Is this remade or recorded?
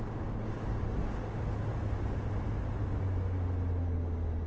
recorded